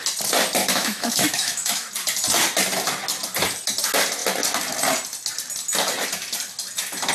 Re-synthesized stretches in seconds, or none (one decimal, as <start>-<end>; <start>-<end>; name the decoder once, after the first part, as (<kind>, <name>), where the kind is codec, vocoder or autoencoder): 0.6-1.9 (autoencoder, DAC-VAE)

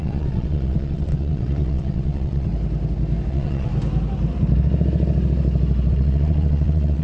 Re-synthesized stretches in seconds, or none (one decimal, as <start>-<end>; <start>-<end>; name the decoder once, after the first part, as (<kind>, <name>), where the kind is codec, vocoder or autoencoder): 0.0-2.5 (vocoder, WaveNeXt); 3.3-3.7; 5.9-7.0

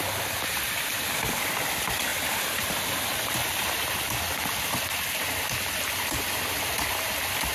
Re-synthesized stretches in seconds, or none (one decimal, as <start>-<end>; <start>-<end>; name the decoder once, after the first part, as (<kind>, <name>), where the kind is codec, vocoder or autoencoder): none

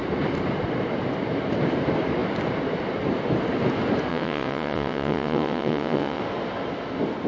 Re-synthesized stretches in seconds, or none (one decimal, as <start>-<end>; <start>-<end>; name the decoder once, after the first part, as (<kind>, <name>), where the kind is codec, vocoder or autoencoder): 4.1-6.2 (vocoder, WaveNeXt)

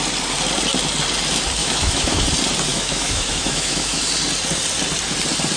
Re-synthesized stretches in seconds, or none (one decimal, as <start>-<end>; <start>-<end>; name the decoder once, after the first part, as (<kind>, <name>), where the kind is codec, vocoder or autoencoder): 1.6-2.2 (autoencoder, DAC-VAE); 2.7-4.0

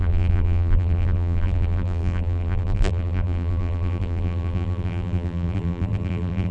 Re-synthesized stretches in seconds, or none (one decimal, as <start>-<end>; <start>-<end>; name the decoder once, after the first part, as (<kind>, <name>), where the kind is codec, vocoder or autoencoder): 0.0-6.5 (vocoder, BigVGAN v2)

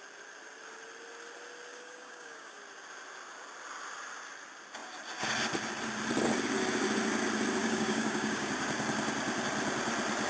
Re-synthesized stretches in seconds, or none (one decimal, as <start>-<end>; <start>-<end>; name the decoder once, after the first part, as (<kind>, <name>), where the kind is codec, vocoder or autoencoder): 1.7-2.6 (codec, DAC); 7.6-8.5

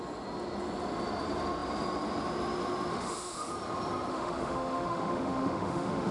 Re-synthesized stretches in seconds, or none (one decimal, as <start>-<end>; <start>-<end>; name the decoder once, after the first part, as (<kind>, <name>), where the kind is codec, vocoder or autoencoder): 2.9-3.5 (autoencoder, DAC-VAE); 4.1-6.1